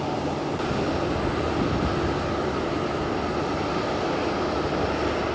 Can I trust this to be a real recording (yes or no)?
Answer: yes